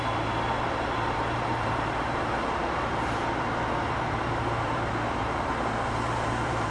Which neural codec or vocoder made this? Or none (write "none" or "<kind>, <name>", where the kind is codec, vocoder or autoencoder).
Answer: vocoder, BigVGAN v2